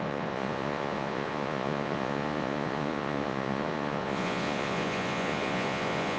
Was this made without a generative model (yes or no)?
no